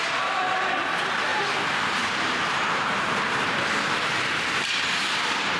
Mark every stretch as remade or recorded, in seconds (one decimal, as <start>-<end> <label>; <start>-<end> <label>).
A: 0.0-1.3 recorded; 1.3-3.5 remade; 3.5-5.6 recorded

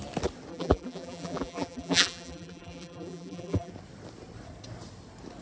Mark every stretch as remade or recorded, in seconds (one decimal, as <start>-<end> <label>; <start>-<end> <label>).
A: 0.0-0.5 recorded; 0.5-3.7 remade; 3.7-5.4 recorded